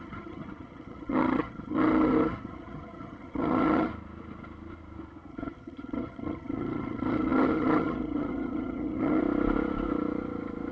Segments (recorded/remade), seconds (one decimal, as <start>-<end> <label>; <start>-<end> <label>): 0.0-3.9 remade; 3.9-5.3 recorded; 5.3-9.2 remade; 9.2-10.7 recorded